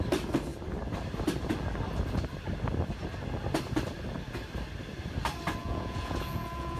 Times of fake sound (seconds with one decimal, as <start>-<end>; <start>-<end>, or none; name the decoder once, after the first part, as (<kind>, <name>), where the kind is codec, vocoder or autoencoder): 5.6-6.8 (vocoder, Vocos)

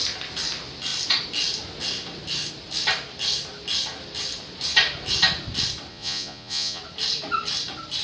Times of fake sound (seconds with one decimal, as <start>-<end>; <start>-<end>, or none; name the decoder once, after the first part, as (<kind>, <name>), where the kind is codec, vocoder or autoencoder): 5.9-6.8 (vocoder, Vocos)

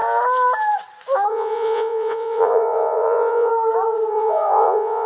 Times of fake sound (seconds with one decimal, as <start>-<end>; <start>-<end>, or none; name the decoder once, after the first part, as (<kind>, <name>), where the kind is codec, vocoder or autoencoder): 1.3-3.5 (vocoder, Vocos); 4.1-5.1

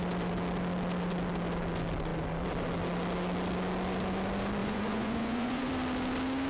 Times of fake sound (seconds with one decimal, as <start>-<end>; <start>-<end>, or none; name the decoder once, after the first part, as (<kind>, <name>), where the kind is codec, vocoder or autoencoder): 4.6-5.7 (vocoder, Vocos)

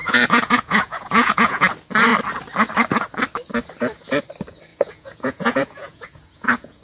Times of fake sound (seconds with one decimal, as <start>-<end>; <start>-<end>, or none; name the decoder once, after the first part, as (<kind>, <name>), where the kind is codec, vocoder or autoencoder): 0.0-1.7 (vocoder, Vocos); 4.7-6.8

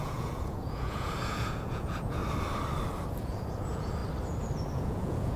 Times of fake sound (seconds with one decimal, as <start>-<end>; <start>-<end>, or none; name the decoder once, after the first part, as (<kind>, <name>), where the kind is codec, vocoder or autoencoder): 0.0-2.2 (vocoder, Vocos); 3.1-4.0; 4.7-5.4

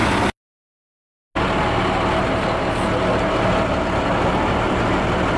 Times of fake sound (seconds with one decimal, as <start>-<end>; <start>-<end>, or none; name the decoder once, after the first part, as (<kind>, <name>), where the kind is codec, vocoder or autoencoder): none